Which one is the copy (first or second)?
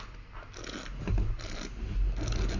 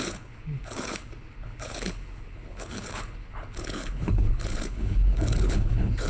second